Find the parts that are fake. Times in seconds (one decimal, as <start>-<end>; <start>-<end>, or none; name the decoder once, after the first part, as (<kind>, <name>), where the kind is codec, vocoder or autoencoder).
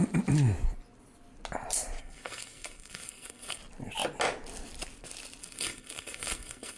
2.0-3.6 (codec, SNAC); 5.4-6.8